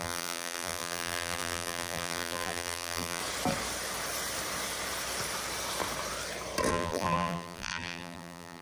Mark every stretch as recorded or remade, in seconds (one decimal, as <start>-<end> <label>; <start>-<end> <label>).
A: 0.0-3.2 remade; 3.2-6.7 recorded; 6.7-8.6 remade